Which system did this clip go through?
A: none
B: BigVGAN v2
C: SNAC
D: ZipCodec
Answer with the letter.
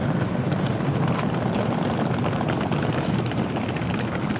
A